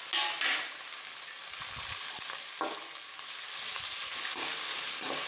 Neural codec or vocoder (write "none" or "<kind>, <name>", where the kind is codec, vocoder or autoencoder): none